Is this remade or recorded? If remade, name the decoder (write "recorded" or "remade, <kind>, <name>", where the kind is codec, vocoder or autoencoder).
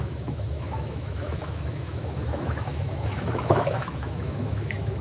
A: remade, autoencoder, DAC-VAE